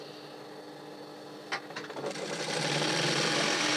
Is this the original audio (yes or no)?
yes